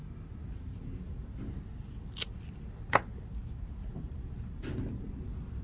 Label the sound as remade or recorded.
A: recorded